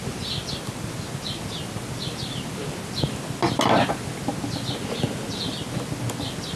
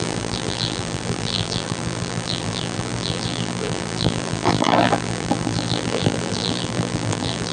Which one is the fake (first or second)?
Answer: second